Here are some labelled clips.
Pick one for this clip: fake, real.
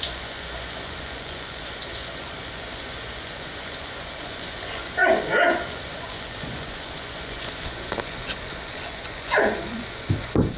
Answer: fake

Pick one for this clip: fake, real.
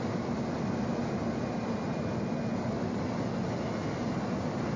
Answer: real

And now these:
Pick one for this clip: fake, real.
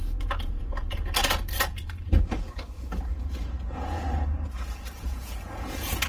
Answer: fake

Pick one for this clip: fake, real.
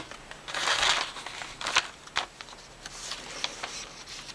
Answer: real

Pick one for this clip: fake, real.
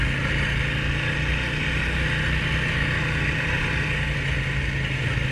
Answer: real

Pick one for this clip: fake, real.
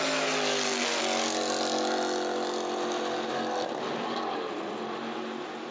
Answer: real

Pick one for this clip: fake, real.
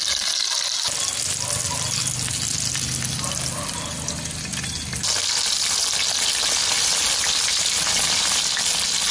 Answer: real